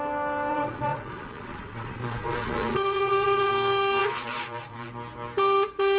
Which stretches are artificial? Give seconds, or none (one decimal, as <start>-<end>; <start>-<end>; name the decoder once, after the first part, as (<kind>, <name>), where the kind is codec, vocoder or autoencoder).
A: 0.5-3.5 (vocoder, Vocos); 4.0-4.9